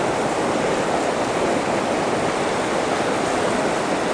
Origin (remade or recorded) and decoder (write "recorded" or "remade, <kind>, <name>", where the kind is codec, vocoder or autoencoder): recorded